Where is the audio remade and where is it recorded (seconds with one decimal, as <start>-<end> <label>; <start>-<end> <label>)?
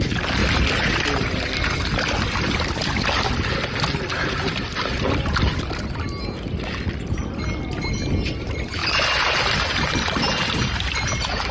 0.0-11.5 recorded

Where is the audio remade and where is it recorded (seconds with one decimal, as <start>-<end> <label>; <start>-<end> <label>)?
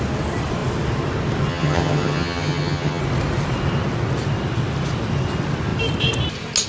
0.0-1.5 recorded; 1.5-3.0 remade; 3.0-6.7 recorded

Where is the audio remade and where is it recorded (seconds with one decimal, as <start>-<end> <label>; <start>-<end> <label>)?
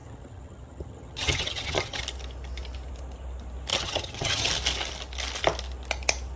0.0-2.0 remade; 2.0-3.7 recorded; 3.7-4.5 remade; 4.5-6.4 recorded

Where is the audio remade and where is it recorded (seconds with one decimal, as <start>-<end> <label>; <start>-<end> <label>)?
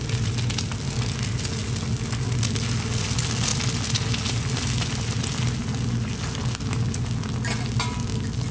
0.0-8.5 recorded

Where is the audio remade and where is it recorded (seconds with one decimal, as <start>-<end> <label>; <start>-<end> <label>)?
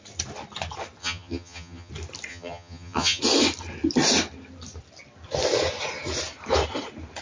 0.0-1.0 recorded; 1.0-1.9 remade; 1.9-2.3 recorded; 2.3-3.2 remade; 3.2-7.2 recorded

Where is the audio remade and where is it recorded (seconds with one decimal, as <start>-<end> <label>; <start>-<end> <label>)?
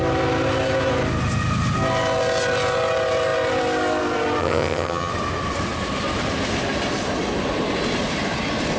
0.0-4.4 recorded; 4.4-5.1 remade; 5.1-8.8 recorded